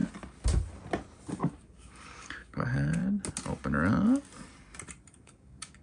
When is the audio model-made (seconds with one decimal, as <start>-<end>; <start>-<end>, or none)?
1.3-3.0; 5.1-5.8

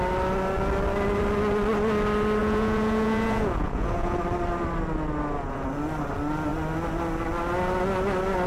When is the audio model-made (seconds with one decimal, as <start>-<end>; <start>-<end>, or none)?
2.4-4.2

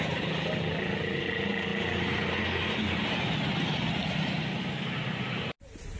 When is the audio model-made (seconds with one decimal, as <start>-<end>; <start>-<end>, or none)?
none

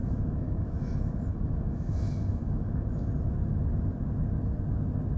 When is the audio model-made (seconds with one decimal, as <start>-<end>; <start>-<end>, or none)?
0.0-3.1

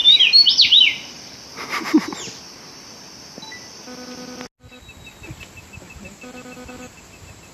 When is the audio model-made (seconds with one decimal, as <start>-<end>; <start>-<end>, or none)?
0.8-1.5; 5.6-7.5

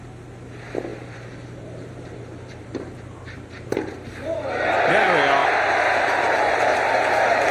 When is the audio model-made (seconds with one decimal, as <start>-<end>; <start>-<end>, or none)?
0.9-3.9; 5.4-6.9

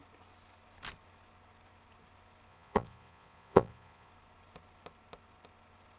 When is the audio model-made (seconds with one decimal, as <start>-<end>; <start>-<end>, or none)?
2.5-4.1

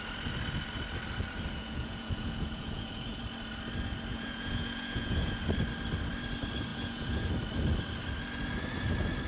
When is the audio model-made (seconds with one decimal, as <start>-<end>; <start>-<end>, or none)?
1.6-3.2; 4.1-5.4; 6.7-7.3